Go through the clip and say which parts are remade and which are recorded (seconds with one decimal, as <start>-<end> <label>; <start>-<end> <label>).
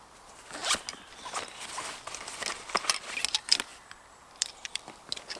0.0-3.7 recorded; 3.7-5.0 remade; 5.0-5.4 recorded